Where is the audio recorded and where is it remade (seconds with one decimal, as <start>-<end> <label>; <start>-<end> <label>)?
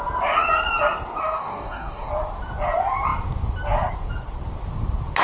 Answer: 0.0-1.2 recorded; 1.2-2.1 remade; 2.1-5.2 recorded